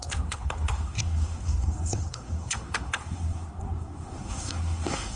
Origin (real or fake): fake